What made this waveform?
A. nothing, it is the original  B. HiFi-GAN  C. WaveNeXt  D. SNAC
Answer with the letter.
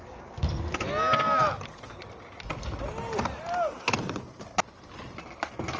A